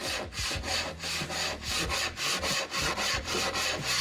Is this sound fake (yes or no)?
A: no